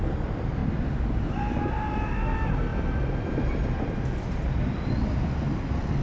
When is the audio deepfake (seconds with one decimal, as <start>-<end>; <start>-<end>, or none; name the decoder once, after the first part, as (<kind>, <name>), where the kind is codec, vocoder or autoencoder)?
none